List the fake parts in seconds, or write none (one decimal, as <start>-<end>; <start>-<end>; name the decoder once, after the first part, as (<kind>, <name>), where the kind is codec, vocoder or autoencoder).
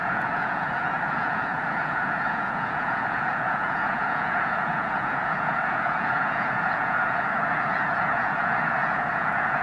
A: 0.0-9.6 (vocoder, Vocos)